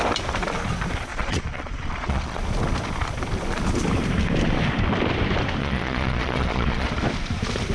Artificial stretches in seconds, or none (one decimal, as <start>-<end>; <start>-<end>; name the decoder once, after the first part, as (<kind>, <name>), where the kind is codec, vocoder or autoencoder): 1.1-2.4 (vocoder, Vocos); 5.6-6.9